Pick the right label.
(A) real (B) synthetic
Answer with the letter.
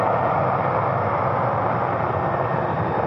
A